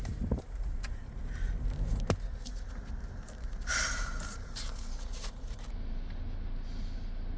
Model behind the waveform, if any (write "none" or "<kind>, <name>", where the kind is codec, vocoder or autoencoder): none